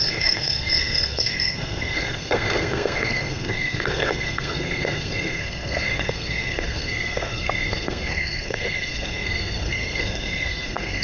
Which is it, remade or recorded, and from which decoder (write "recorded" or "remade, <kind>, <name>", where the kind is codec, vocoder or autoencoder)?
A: remade, codec, SNAC